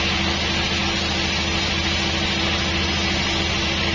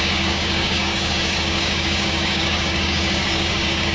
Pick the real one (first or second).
first